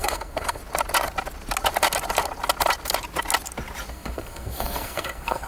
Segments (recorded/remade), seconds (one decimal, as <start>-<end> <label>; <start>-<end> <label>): 0.0-0.6 remade; 0.6-3.9 recorded; 3.9-5.5 remade